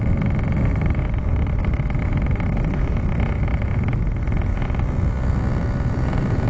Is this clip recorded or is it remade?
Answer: recorded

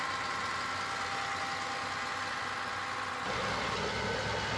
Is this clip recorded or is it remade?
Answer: recorded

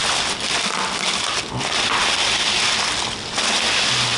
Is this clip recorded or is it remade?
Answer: recorded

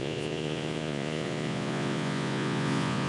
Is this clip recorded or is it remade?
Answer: remade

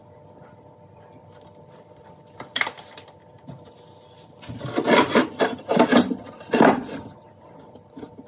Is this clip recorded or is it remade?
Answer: remade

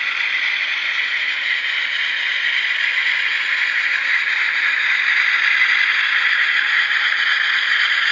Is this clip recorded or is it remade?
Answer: recorded